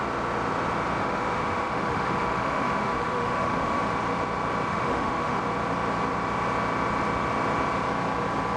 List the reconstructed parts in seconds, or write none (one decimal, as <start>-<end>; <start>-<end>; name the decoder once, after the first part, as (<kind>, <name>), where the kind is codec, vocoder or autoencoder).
1.0-3.8 (autoencoder, DAC-VAE); 4.7-5.4